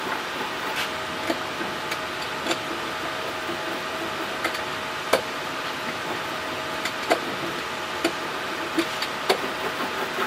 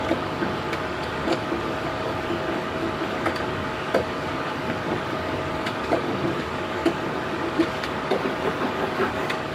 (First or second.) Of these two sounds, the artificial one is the second